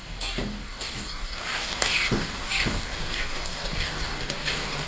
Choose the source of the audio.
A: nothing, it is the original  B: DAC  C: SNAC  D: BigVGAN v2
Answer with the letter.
B